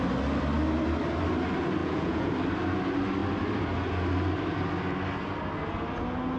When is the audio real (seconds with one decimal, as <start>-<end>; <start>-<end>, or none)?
0.0-1.8; 2.3-6.4

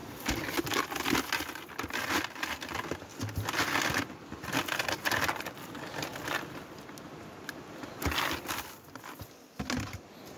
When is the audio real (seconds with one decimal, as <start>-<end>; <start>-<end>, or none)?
0.0-10.4